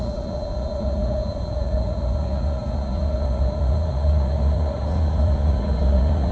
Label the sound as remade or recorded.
remade